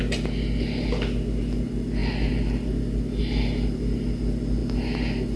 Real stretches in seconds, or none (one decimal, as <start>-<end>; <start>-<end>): 0.0-5.4